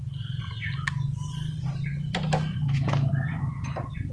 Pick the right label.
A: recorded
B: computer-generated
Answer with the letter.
A